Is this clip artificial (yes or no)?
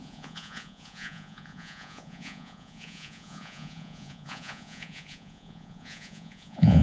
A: yes